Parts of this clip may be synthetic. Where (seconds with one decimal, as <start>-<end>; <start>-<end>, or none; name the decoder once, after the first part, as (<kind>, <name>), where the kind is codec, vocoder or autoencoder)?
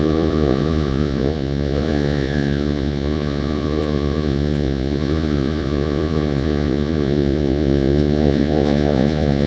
0.0-9.5 (vocoder, Vocos)